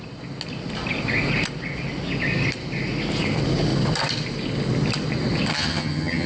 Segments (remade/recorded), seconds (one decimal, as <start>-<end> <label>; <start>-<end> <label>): 0.0-5.5 recorded; 5.5-6.3 remade